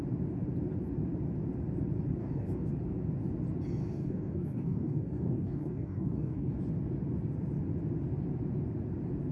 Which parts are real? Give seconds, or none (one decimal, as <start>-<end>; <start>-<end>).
0.0-2.2; 2.7-3.8; 6.5-9.3